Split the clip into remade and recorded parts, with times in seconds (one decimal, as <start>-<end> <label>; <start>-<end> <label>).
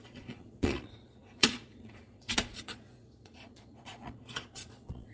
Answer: 0.0-5.1 remade